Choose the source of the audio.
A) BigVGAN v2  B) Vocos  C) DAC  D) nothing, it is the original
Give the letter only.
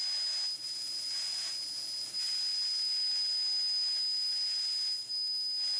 D